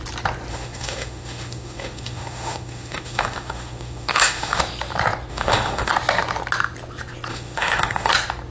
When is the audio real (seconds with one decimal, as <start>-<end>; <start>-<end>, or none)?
0.0-0.5; 4.6-5.3; 5.9-7.3; 8.1-8.5